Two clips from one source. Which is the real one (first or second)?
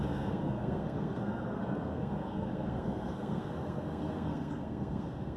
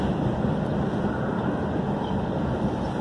second